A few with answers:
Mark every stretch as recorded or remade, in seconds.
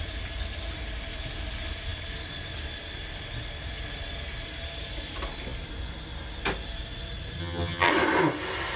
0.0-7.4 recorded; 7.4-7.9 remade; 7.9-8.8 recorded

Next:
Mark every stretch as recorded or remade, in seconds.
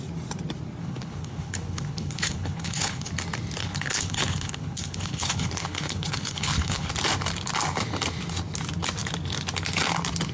0.0-0.8 recorded; 0.8-3.1 remade; 3.1-3.6 recorded; 3.6-6.9 remade; 6.9-10.3 recorded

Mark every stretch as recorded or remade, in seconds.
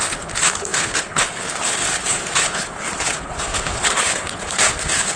0.0-5.2 remade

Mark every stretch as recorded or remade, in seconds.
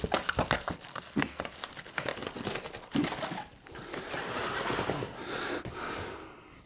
0.0-0.9 recorded; 0.9-1.4 remade; 1.4-6.7 recorded